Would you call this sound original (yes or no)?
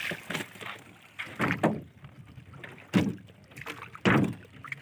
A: yes